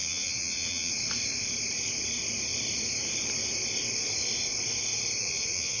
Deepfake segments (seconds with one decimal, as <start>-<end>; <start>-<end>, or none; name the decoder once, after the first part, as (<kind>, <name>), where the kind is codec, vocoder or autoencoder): 0.0-0.9 (vocoder, Vocos); 5.2-5.8